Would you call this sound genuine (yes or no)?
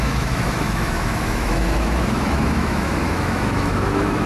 no